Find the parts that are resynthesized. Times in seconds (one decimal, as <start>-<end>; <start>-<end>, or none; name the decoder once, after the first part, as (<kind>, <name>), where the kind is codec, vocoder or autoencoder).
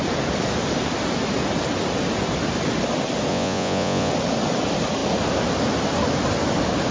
3.3-4.1 (vocoder, Vocos)